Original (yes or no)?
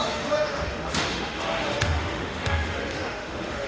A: no